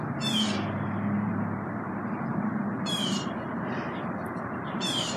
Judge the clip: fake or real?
fake